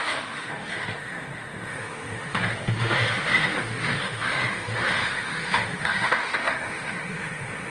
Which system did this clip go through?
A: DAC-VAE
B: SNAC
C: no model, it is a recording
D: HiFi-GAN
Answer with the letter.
A